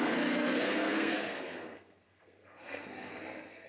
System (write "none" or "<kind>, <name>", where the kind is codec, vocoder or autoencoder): codec, SNAC